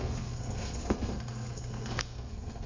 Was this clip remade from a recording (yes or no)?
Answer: yes